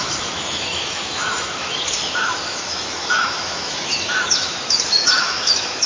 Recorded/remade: remade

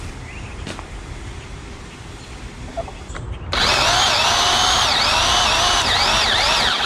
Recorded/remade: recorded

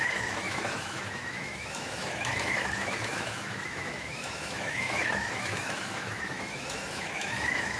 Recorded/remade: remade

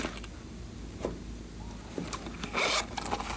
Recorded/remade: recorded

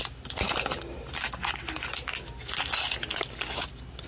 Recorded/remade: recorded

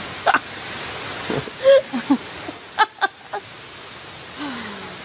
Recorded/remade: recorded